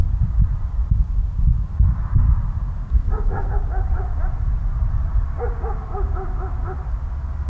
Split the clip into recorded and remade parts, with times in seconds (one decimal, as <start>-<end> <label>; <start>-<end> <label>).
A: 0.0-2.8 recorded; 2.8-3.5 remade; 3.5-7.5 recorded